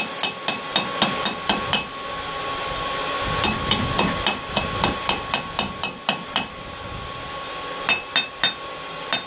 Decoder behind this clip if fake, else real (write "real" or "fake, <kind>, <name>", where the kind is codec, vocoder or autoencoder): real